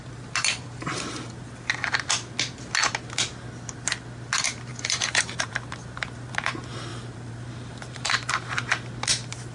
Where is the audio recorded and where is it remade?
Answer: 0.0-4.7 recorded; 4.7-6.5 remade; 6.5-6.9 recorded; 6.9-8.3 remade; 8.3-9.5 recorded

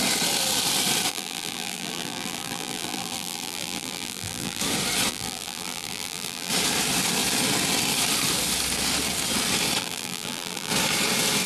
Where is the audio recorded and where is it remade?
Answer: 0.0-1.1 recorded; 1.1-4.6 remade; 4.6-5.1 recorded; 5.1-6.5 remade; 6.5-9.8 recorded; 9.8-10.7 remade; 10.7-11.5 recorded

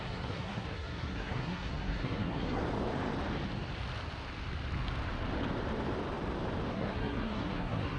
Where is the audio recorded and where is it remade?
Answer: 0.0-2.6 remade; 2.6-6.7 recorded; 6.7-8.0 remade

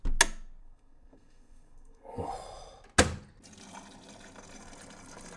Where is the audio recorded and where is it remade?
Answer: 0.0-0.6 recorded; 0.6-2.3 remade; 2.3-5.4 recorded

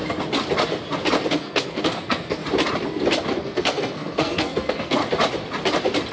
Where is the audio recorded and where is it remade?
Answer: 0.0-1.3 recorded; 1.3-2.4 remade; 2.4-3.3 recorded; 3.3-5.0 remade; 5.0-6.1 recorded